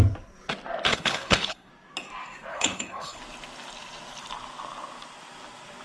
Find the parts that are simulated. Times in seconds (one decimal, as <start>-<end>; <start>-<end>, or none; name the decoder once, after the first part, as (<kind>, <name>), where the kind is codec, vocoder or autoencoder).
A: 0.9-1.7 (codec, HILCodec); 2.5-3.2